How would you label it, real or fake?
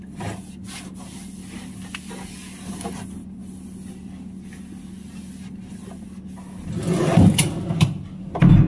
real